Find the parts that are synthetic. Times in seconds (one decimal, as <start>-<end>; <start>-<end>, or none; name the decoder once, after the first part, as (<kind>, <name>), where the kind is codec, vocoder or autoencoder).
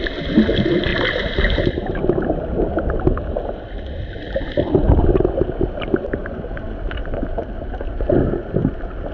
none